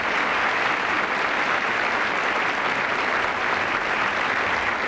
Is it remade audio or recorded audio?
recorded